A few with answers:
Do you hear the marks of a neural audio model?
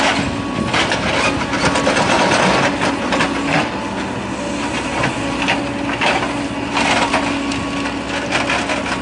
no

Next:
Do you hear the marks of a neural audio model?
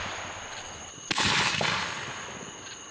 no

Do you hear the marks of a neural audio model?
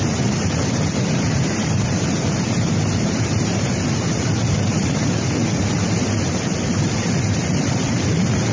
yes